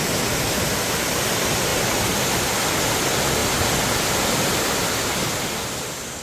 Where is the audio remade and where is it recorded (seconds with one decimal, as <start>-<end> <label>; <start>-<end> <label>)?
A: 0.0-6.2 recorded